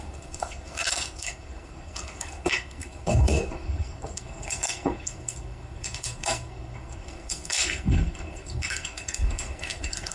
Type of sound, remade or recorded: remade